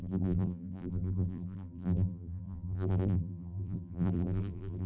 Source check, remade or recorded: remade